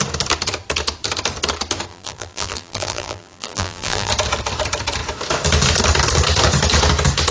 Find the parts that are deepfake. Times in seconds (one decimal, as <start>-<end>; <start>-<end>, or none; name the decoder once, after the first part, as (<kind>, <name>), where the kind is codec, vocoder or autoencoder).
1.9-4.1 (vocoder, BigVGAN v2)